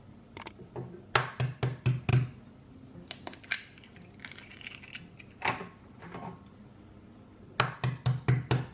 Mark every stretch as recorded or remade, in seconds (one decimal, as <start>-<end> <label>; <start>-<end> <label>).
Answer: 0.0-2.1 recorded; 2.1-6.7 remade; 6.7-8.7 recorded